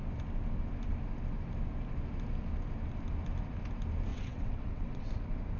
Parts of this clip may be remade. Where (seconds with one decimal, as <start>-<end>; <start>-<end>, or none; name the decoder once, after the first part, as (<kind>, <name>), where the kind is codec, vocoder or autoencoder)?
4.1-5.1 (vocoder, WaveNeXt)